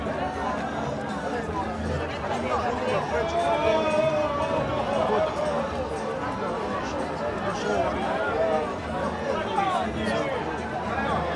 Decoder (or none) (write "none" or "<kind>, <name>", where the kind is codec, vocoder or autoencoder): none